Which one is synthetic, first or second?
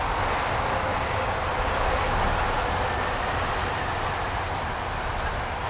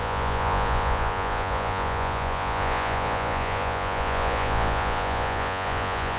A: second